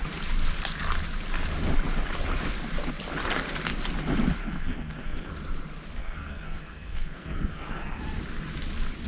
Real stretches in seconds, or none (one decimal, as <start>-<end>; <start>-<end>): 0.0-4.4; 5.3-6.0; 8.0-9.1